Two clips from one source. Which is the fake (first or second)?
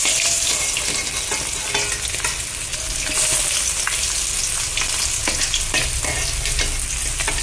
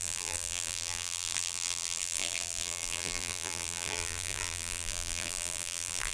second